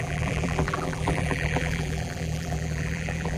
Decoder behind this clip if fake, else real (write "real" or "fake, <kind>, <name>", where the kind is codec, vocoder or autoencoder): fake, vocoder, BigVGAN v2